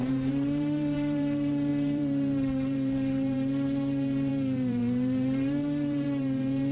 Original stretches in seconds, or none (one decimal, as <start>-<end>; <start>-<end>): none